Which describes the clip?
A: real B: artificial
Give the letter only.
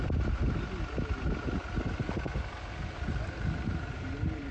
A